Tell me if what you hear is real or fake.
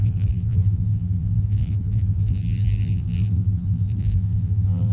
fake